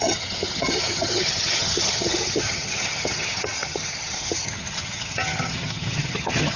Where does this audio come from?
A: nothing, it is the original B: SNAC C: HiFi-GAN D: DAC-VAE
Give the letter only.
C